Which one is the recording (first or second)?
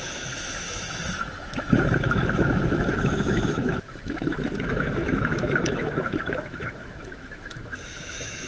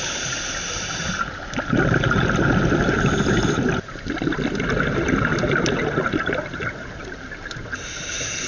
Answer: second